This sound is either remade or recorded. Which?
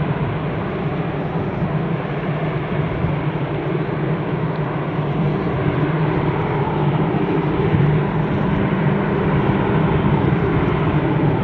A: remade